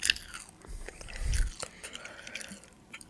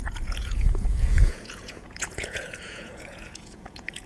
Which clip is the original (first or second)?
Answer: first